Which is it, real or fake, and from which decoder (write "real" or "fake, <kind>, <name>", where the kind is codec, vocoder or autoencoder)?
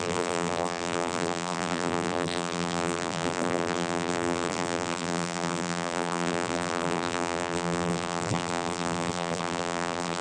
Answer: fake, vocoder, BigVGAN v2